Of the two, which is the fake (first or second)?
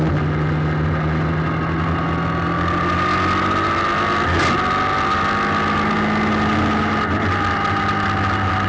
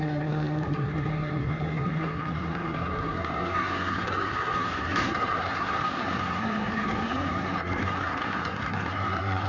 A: second